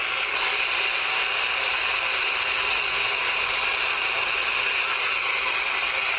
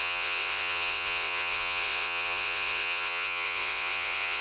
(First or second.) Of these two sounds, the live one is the first